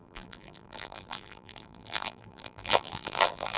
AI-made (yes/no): yes